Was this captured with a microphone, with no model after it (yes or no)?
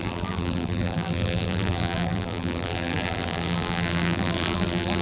no